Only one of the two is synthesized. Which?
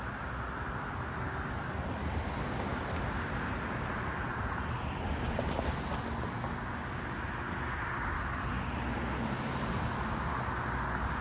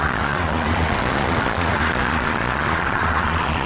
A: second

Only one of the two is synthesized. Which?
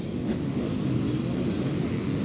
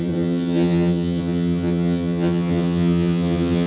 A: second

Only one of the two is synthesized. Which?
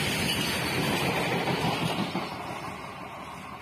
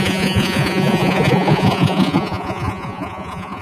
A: second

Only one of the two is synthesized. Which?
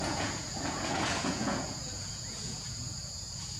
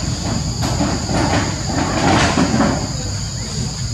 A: first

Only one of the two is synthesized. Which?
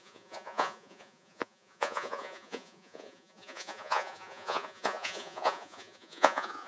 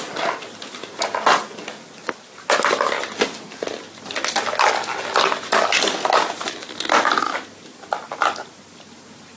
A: first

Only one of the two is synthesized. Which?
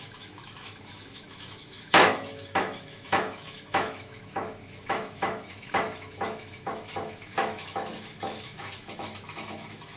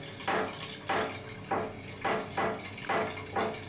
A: first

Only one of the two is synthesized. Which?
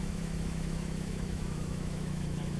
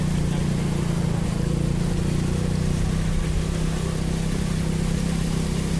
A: first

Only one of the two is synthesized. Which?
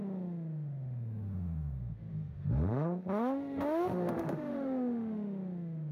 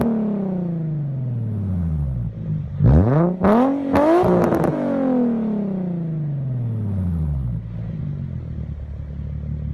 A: first